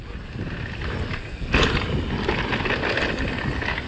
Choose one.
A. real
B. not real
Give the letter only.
A